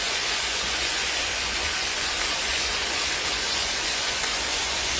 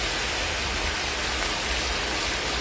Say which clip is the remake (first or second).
first